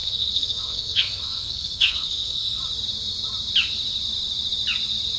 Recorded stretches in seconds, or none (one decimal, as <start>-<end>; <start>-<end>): 2.6-5.2

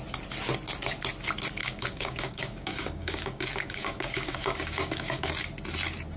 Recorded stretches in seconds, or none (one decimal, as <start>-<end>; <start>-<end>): 0.0-1.6; 5.3-6.2

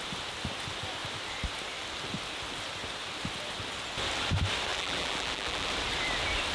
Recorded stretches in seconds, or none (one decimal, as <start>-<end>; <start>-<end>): 0.0-4.7; 5.7-6.5

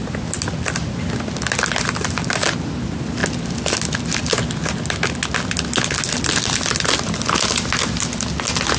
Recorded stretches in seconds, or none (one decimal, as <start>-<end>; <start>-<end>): 0.0-8.8

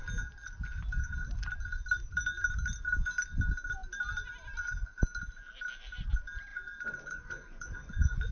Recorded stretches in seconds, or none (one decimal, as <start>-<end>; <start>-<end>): 0.0-6.5

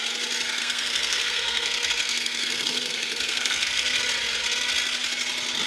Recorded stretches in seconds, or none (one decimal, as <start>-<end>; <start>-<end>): 0.0-0.6; 4.0-5.7